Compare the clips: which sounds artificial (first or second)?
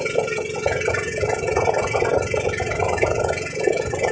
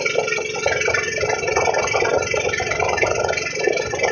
first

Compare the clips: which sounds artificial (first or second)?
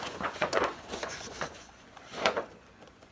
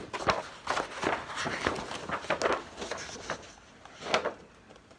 first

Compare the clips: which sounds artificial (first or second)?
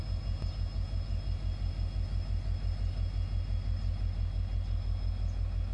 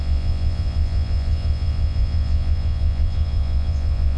second